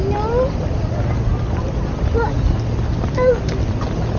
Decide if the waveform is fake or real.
real